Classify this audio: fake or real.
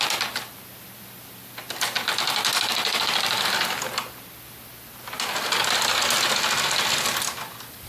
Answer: real